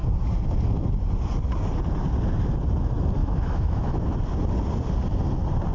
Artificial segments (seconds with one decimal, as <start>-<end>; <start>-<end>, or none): 3.2-4.0